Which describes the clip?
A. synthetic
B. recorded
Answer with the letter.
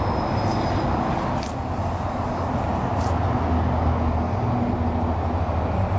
B